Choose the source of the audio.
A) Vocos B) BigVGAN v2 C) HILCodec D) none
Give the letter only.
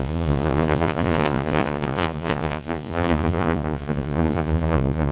A